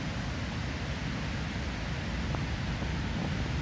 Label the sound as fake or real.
real